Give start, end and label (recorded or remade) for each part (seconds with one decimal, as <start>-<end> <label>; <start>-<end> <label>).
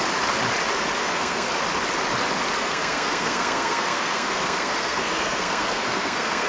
0.0-1.0 recorded; 1.0-1.5 remade; 1.5-2.6 recorded; 2.6-6.5 remade